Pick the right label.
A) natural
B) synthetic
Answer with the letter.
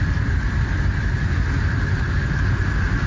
A